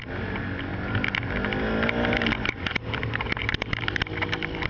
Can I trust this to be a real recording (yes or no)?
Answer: yes